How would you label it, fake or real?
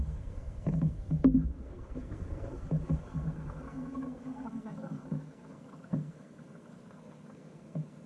fake